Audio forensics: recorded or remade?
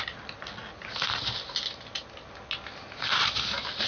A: recorded